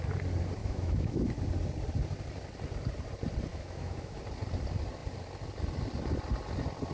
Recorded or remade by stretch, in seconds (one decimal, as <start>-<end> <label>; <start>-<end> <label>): 0.0-0.6 recorded; 0.6-1.3 remade; 1.3-3.5 recorded; 3.5-4.2 remade; 4.2-6.9 recorded